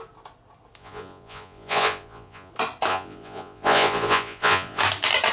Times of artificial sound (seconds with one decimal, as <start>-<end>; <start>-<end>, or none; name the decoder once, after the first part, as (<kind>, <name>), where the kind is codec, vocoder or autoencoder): 0.8-2.5 (vocoder, Vocos); 2.9-4.8